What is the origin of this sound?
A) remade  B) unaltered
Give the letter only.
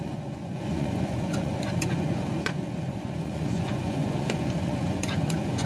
A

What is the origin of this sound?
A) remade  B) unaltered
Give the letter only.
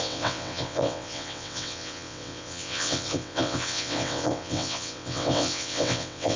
A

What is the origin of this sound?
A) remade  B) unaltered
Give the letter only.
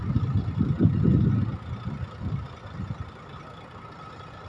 B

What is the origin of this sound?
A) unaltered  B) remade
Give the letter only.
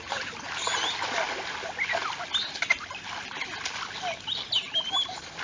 A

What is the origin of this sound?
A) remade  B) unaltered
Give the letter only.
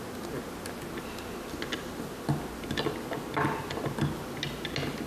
B